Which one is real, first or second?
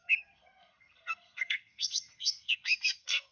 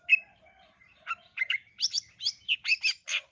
second